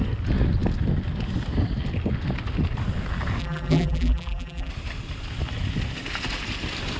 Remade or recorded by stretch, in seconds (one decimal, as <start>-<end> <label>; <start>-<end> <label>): 0.0-3.4 recorded; 3.4-4.7 remade; 4.7-7.0 recorded